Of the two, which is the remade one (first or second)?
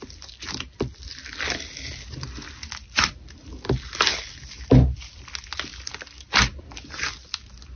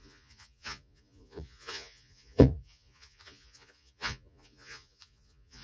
second